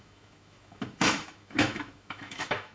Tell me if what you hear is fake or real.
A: fake